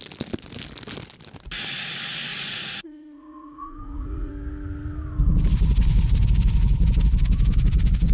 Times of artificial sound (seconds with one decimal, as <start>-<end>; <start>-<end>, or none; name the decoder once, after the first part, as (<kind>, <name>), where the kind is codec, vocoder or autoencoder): 2.3-4.3 (vocoder, Vocos)

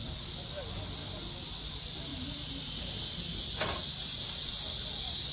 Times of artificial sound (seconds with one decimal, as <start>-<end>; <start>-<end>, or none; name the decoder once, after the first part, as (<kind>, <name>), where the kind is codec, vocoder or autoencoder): 4.4-5.3 (vocoder, Vocos)

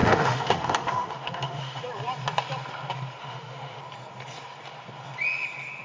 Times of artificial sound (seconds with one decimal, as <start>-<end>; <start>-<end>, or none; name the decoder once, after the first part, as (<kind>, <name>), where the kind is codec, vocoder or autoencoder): 0.0-1.8 (autoencoder, DAC-VAE); 3.2-3.8

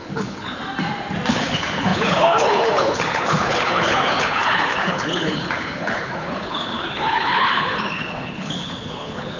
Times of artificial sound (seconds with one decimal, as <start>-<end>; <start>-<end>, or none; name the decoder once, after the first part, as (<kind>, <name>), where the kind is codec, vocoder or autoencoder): 0.0-0.6 (codec, HILCodec); 1.3-9.4

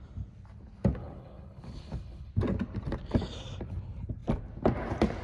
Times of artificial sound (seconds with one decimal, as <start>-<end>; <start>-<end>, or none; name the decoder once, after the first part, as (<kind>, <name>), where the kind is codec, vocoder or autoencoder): 1.0-2.3 (codec, HILCodec)

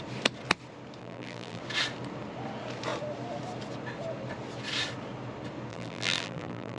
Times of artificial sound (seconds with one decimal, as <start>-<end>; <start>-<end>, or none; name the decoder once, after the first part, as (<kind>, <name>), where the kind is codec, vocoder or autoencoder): 1.0-1.6 (vocoder, BigVGAN v2); 5.7-6.8

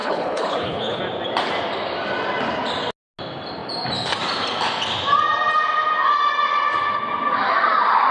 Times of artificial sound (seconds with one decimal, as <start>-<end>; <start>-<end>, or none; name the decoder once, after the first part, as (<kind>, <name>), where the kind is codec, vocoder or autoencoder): 0.0-1.0 (codec, HILCodec)

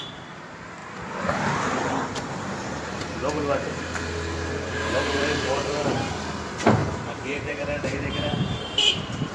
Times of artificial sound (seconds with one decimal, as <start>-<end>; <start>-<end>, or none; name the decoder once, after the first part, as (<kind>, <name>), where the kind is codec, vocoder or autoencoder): 0.0-0.8 (vocoder, BigVGAN v2); 2.8-3.2; 4.7-9.3